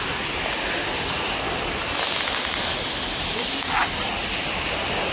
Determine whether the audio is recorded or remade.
recorded